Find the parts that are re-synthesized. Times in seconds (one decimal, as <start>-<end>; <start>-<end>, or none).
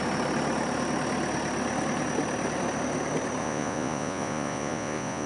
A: 3.4-5.3